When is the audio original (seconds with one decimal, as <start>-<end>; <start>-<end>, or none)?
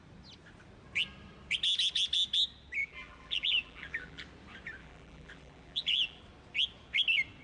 0.0-2.8; 4.2-4.8; 6.2-7.4